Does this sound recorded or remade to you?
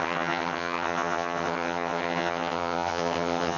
remade